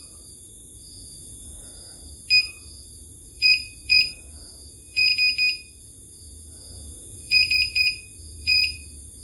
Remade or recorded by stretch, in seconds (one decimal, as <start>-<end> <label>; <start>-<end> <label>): 0.0-1.7 remade; 1.7-2.4 recorded; 2.4-5.1 remade; 5.1-5.8 recorded; 5.8-9.2 remade

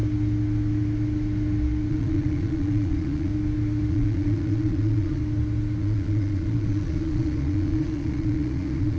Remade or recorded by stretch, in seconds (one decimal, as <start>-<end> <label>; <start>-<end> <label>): 0.0-1.9 recorded; 1.9-3.3 remade; 3.3-3.9 recorded; 3.9-5.2 remade; 5.2-5.8 recorded; 5.8-9.0 remade

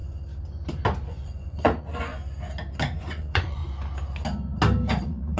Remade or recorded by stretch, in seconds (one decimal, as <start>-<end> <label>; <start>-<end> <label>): 0.0-1.1 recorded; 1.1-2.1 remade; 2.1-3.0 recorded; 3.0-3.6 remade; 3.6-5.0 recorded; 5.0-5.4 remade

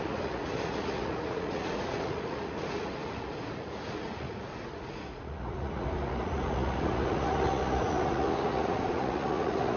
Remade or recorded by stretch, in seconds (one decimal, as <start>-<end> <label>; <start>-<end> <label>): 0.0-9.8 remade

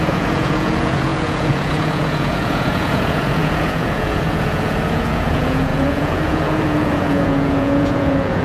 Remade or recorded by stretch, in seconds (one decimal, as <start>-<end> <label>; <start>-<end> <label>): 0.0-8.4 remade

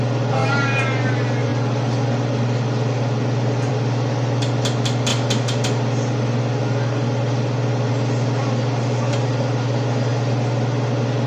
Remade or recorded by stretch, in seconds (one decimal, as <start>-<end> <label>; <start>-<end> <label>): 0.0-11.3 recorded